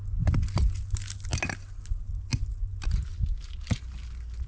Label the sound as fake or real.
real